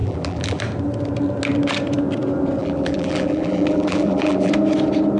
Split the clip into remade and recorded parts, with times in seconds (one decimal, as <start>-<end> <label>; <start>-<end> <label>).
0.0-0.6 remade; 0.6-2.6 recorded; 2.6-4.5 remade; 4.5-5.2 recorded